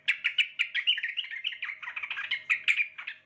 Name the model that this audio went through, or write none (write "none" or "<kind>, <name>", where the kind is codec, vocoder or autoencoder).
none